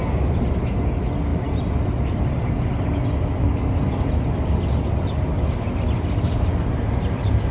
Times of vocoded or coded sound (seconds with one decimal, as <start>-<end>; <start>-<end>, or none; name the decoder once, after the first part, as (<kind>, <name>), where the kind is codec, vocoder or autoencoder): none